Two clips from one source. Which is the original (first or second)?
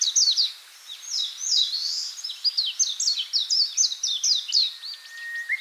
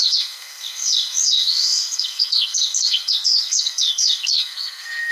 first